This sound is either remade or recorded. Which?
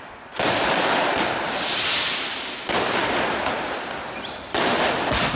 recorded